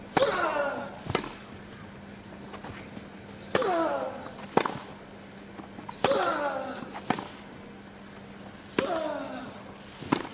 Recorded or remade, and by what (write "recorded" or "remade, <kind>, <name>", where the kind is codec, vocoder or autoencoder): recorded